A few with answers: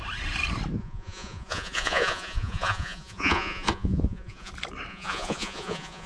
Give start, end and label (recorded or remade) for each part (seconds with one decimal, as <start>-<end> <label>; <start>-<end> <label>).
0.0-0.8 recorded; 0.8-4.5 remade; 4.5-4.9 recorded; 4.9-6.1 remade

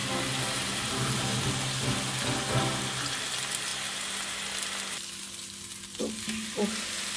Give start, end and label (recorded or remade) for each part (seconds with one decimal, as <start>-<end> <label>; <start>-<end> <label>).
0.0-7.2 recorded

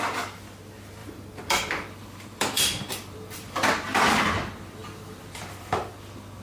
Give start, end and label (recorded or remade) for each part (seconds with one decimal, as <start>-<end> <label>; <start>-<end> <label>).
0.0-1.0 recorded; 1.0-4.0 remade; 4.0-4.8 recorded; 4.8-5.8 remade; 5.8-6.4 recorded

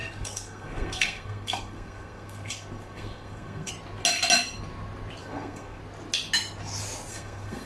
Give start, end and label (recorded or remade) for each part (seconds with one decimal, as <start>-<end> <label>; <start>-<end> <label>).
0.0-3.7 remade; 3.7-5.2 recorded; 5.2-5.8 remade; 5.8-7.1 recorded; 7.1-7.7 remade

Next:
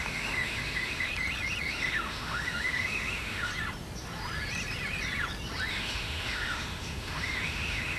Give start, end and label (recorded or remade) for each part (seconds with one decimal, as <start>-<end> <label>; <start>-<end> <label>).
0.0-1.1 remade; 1.1-1.7 recorded; 1.7-3.5 remade; 3.5-5.7 recorded; 5.7-8.0 remade

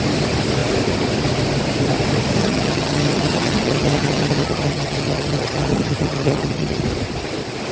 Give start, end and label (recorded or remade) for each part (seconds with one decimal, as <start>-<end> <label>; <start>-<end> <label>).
0.0-2.4 recorded; 2.4-6.8 remade; 6.8-7.7 recorded

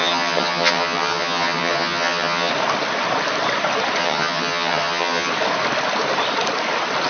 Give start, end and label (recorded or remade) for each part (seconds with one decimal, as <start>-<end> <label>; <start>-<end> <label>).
0.0-2.5 remade; 2.5-4.0 recorded; 4.0-5.3 remade; 5.3-7.1 recorded